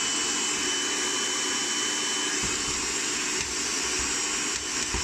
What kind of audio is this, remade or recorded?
recorded